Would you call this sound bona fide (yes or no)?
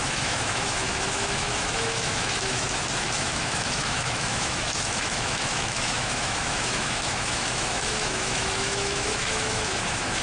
no